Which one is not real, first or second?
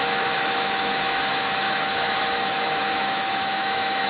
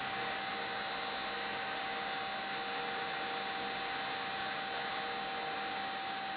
first